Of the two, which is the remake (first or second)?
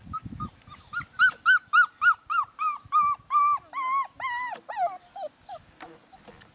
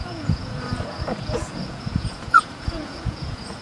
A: second